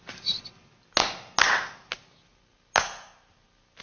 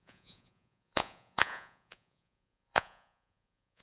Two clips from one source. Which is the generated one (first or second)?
second